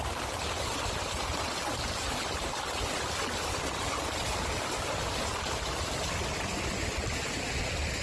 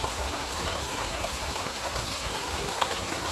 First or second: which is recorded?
first